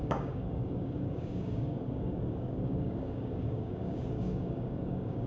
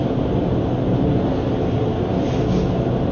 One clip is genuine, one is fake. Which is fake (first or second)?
first